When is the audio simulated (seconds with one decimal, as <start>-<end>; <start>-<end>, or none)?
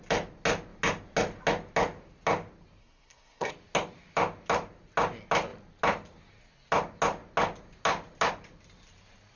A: 2.8-3.5